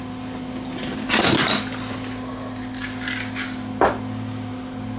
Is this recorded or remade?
recorded